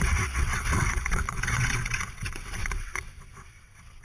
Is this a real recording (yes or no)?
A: no